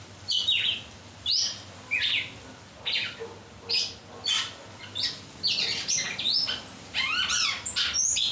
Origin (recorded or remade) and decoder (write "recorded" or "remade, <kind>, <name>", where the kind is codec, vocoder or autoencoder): recorded